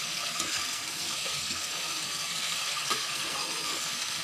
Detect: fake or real fake